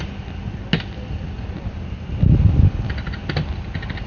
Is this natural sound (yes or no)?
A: yes